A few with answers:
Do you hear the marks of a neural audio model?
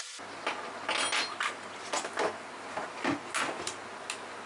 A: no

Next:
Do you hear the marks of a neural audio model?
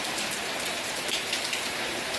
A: yes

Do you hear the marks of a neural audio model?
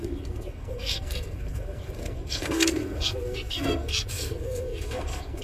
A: yes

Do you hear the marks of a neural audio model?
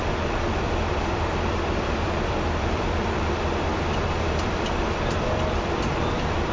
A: yes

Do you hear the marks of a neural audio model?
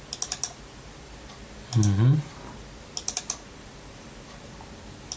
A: no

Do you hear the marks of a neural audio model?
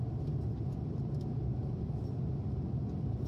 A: yes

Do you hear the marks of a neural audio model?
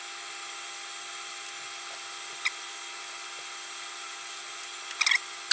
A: no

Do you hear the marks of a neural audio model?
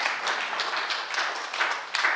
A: no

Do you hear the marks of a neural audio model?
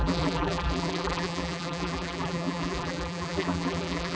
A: yes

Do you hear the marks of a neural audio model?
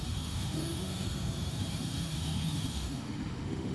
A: yes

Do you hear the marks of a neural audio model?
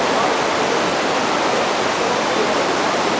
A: no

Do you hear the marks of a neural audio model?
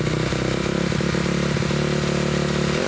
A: no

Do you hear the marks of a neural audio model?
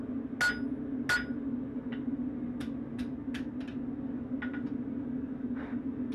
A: no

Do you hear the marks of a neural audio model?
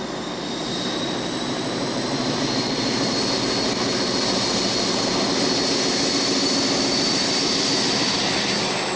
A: no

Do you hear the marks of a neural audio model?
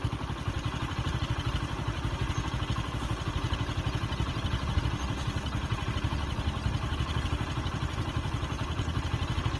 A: no